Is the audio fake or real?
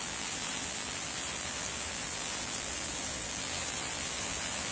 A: fake